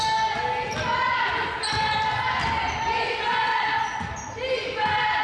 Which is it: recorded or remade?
recorded